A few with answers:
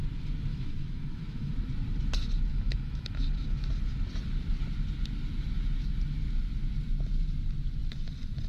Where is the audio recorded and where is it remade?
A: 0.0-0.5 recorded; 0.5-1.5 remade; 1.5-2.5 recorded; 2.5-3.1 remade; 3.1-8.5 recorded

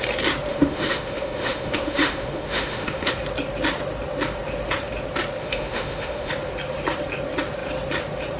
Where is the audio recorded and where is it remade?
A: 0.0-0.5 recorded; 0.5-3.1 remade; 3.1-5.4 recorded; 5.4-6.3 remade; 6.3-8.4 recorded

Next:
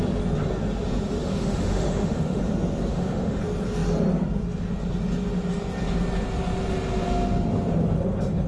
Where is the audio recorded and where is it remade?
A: 0.0-1.2 recorded; 1.2-2.4 remade; 2.4-2.9 recorded; 2.9-3.4 remade; 3.4-8.5 recorded

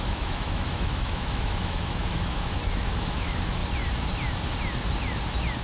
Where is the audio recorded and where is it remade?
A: 0.0-3.6 remade; 3.6-5.6 recorded

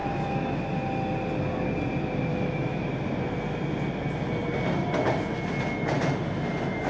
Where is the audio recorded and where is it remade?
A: 0.0-0.6 remade; 0.6-2.3 recorded; 2.3-2.9 remade; 2.9-6.9 recorded